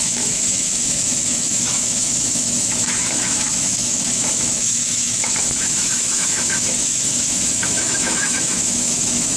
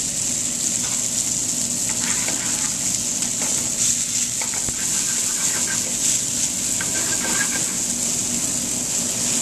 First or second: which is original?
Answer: second